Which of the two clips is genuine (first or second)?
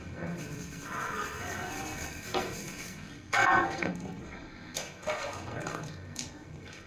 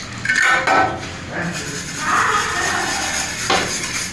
second